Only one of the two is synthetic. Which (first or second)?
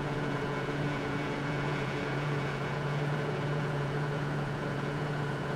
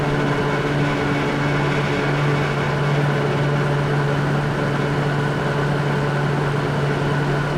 first